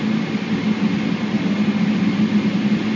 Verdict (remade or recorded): recorded